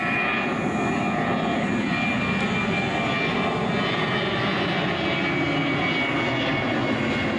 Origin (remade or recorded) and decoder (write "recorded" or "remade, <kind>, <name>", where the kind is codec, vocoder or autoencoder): recorded